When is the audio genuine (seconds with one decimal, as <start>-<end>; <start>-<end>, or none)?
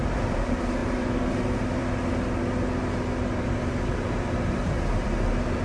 0.0-5.6